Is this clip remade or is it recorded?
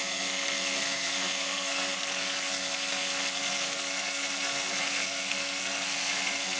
remade